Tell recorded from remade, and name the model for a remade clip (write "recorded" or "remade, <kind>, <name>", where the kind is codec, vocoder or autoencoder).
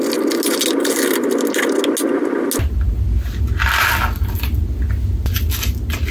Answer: recorded